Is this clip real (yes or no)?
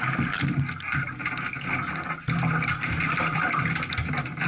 yes